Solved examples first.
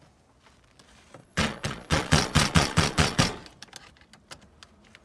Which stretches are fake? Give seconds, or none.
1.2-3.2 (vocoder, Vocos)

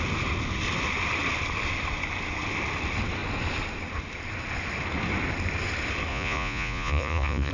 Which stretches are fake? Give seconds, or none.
6.1-7.5 (vocoder, Vocos)